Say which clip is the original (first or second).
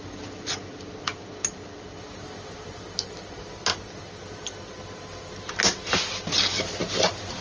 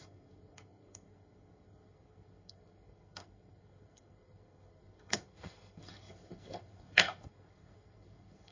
first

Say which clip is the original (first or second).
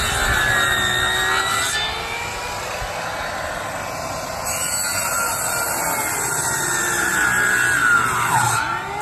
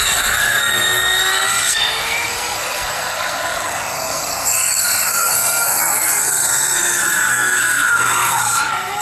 first